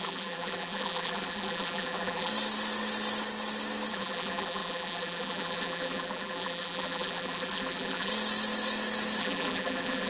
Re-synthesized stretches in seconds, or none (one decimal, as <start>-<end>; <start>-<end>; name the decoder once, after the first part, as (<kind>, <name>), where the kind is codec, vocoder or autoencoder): 0.0-2.3 (vocoder, BigVGAN v2); 3.9-8.1; 9.2-10.1